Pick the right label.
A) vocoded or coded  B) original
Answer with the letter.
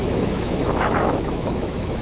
A